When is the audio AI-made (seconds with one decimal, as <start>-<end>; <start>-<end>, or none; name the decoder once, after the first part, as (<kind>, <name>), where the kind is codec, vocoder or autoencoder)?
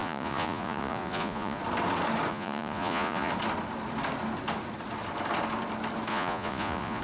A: 0.0-1.6 (vocoder, Vocos); 2.3-3.3; 6.1-7.0